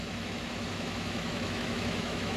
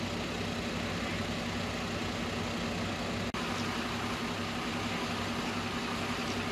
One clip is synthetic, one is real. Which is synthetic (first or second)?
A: first